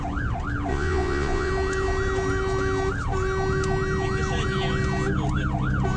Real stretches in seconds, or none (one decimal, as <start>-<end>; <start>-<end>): 0.0-0.7; 1.5-6.0